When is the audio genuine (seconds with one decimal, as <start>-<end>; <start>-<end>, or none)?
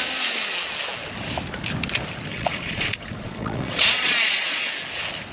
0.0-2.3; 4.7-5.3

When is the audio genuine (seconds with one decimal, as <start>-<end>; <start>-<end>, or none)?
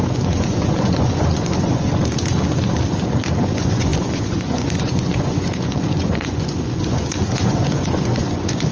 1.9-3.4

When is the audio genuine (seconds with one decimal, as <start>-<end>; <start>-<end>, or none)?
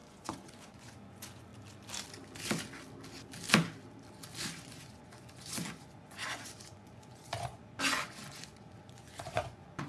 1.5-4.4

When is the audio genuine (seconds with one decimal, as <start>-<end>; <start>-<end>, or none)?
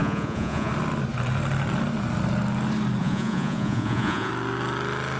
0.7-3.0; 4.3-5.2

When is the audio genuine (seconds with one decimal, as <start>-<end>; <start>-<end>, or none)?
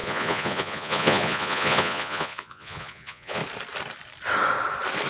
3.4-5.1